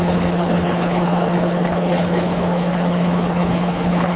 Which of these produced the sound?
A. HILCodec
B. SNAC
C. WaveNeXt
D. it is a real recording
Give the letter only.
A